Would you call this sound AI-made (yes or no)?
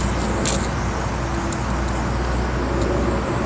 no